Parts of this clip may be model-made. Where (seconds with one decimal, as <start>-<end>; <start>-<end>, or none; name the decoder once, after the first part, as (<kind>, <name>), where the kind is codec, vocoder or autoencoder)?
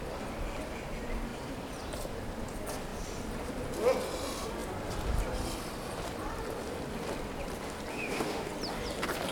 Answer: 7.9-8.5 (autoencoder, DAC-VAE)